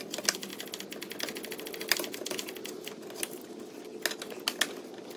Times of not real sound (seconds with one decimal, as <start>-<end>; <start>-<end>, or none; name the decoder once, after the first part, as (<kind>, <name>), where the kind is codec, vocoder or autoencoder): none